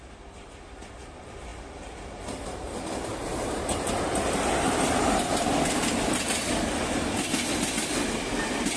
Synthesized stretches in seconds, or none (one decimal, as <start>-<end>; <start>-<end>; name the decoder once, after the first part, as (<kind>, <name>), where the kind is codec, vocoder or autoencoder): none